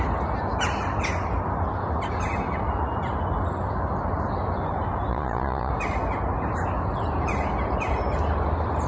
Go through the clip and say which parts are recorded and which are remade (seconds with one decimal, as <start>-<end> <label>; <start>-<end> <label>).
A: 0.0-5.1 recorded; 5.1-5.7 remade; 5.7-8.9 recorded